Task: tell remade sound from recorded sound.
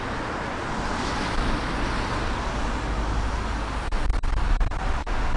recorded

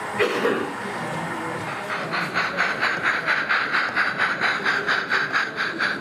recorded